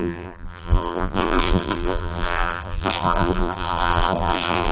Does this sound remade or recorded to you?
remade